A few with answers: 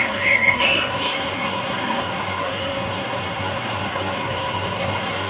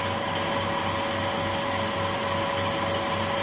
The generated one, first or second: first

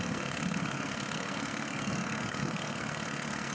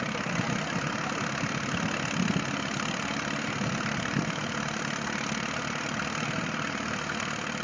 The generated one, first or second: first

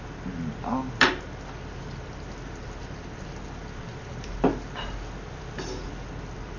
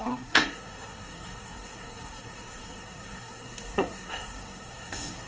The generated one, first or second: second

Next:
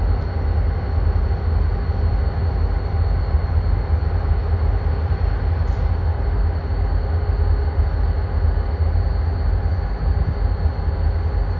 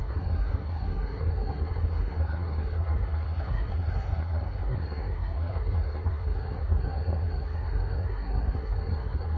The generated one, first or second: second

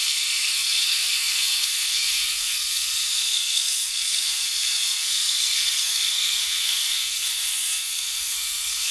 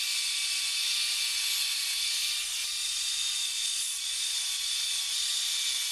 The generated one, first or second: first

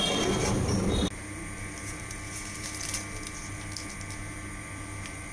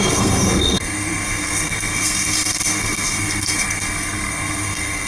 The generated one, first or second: second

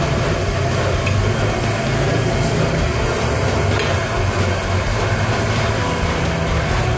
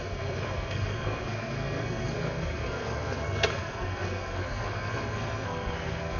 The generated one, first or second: second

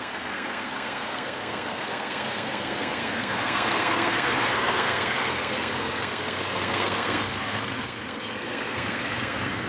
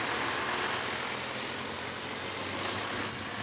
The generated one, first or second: first